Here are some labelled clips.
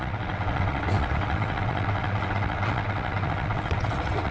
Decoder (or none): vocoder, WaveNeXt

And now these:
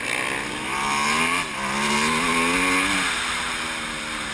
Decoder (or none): none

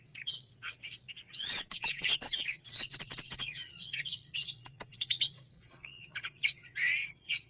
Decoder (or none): vocoder, WaveNeXt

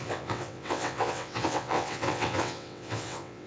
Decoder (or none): vocoder, WaveNeXt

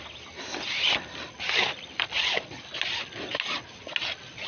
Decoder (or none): none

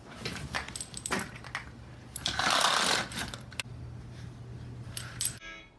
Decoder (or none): none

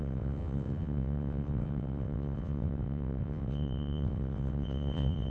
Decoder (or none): vocoder, WaveNeXt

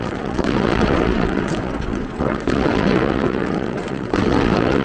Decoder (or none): vocoder, WaveNeXt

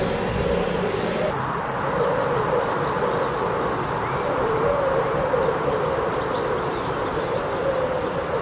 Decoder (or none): none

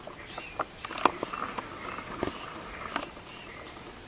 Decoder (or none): none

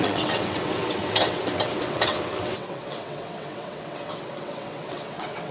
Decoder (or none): vocoder, WaveNeXt